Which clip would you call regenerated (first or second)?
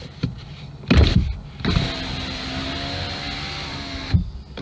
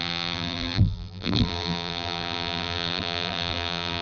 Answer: second